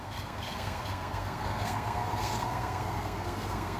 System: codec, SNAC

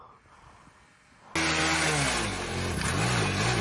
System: none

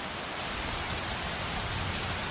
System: none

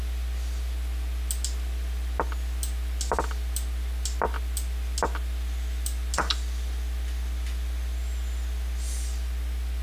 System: none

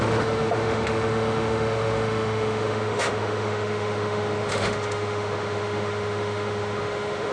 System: autoencoder, DAC-VAE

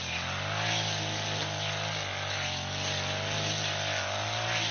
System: none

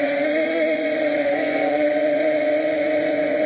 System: vocoder, Vocos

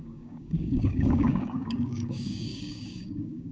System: codec, DAC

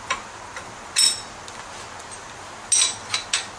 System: none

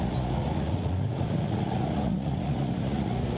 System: vocoder, Vocos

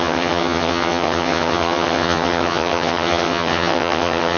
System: vocoder, HiFi-GAN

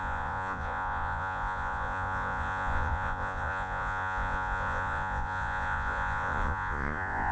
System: vocoder, Vocos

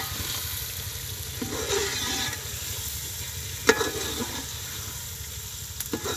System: none